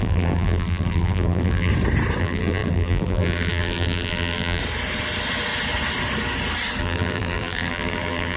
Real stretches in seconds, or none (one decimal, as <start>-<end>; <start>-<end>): 1.7-2.2; 4.6-6.8